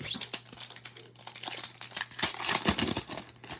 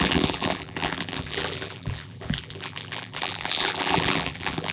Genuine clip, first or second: first